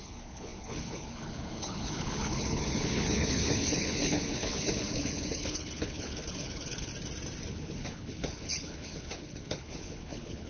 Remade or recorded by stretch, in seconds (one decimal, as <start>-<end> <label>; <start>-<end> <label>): 0.0-6.9 remade; 6.9-7.5 recorded; 7.5-10.5 remade